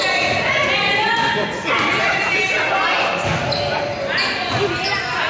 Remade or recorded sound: recorded